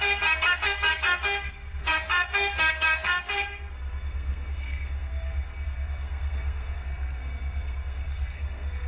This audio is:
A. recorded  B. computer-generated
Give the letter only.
B